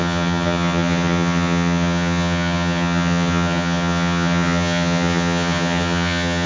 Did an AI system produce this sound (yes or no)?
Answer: yes